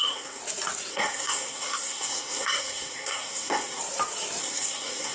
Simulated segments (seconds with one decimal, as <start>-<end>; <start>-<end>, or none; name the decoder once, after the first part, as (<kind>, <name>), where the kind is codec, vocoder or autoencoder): 0.0-0.4 (codec, SNAC); 0.9-3.8; 4.4-5.1